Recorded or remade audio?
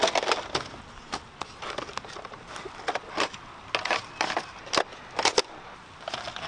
recorded